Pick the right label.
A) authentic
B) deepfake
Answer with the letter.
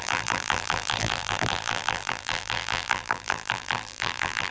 B